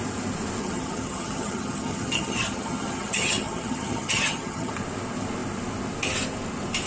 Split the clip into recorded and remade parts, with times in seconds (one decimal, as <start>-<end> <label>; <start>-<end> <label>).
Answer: 0.0-0.6 recorded; 0.6-4.7 remade; 4.7-6.9 recorded